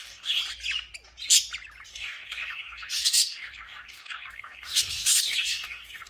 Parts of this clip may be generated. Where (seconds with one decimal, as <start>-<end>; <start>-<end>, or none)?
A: 0.0-0.4; 1.9-6.1